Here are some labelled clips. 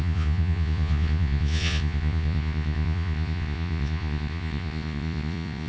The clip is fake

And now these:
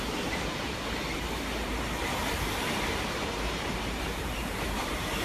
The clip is fake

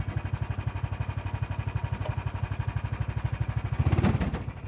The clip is real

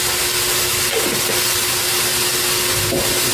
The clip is real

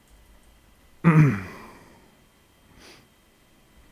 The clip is real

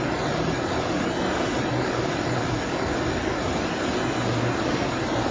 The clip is real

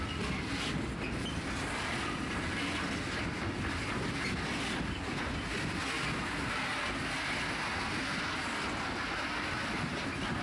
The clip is real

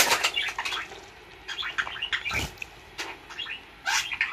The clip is real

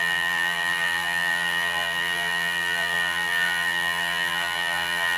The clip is fake